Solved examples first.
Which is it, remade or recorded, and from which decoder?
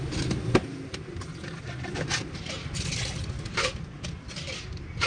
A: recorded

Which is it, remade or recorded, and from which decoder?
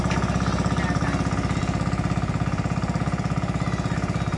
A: recorded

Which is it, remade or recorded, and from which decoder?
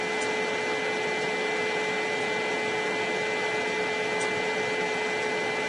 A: recorded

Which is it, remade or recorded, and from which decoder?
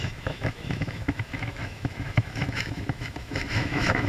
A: remade, autoencoder, DAC-VAE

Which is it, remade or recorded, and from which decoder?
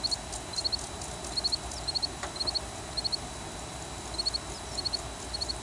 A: recorded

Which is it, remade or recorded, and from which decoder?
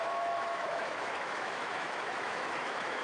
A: remade, autoencoder, DAC-VAE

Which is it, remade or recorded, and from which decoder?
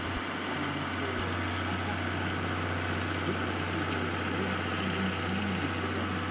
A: recorded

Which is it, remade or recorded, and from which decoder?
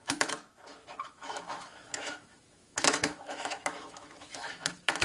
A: remade, autoencoder, DAC-VAE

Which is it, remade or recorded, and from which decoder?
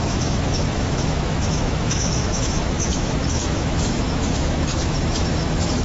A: remade, autoencoder, DAC-VAE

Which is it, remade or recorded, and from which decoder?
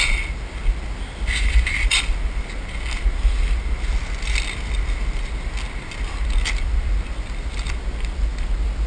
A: recorded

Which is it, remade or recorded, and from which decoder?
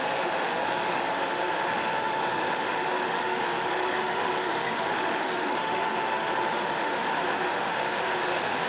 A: remade, autoencoder, DAC-VAE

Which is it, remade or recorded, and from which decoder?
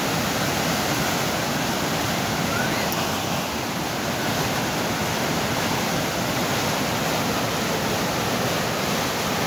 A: recorded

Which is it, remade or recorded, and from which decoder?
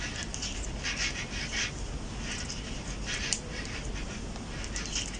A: recorded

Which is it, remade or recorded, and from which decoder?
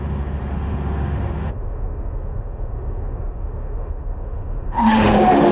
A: remade, autoencoder, DAC-VAE